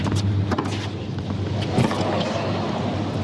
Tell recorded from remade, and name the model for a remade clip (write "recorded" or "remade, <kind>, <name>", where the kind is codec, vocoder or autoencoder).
recorded